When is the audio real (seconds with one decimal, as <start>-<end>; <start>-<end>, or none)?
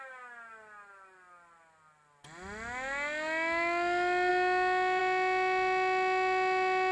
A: 0.0-6.9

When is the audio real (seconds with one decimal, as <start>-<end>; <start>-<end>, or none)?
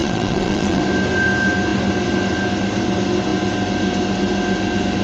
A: 0.8-5.0